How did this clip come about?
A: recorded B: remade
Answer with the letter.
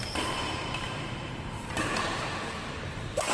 B